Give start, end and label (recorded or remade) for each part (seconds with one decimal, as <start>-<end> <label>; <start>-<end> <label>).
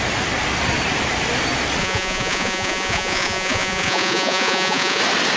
0.0-1.8 recorded; 1.8-5.0 remade; 5.0-5.4 recorded